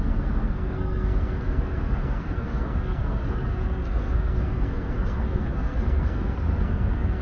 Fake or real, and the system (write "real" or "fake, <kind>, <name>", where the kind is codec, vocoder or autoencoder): fake, codec, SNAC